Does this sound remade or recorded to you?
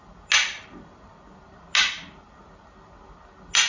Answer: recorded